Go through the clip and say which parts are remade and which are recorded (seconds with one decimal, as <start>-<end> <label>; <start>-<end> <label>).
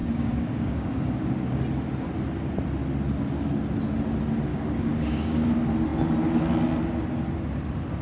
0.0-1.6 remade; 1.6-4.5 recorded; 4.5-5.5 remade; 5.5-8.0 recorded